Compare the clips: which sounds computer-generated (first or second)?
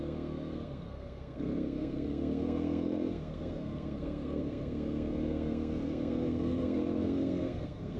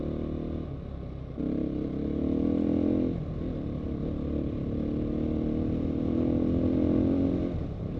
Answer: first